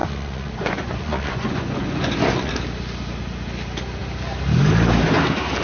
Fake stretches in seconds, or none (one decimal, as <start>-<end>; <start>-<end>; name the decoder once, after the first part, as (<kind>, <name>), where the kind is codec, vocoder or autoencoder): 0.0-2.5 (vocoder, Vocos)